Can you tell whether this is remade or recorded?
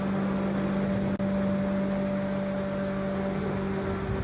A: recorded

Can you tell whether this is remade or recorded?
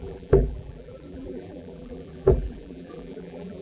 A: remade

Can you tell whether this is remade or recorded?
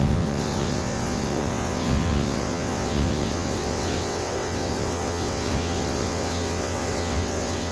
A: remade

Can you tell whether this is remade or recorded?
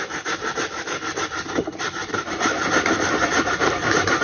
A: remade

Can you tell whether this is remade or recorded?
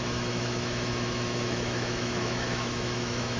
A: remade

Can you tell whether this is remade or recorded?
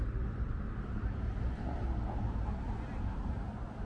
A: recorded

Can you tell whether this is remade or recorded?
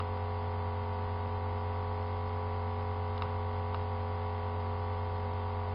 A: recorded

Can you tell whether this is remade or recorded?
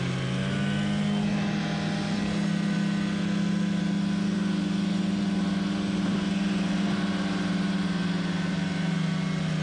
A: recorded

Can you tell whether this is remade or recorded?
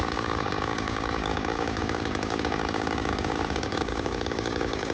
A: remade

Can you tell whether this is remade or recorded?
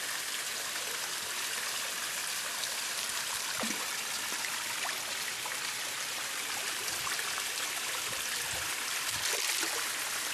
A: remade